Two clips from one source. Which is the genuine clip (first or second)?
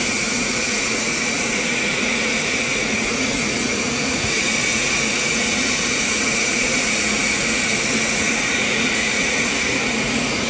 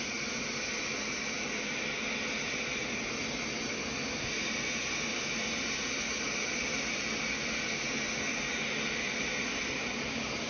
second